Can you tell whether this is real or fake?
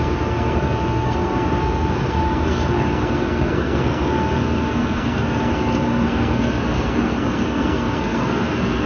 fake